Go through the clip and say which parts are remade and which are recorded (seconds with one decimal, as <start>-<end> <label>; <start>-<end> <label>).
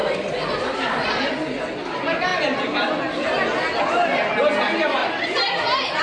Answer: 0.0-1.3 remade; 1.3-5.0 recorded; 5.0-6.0 remade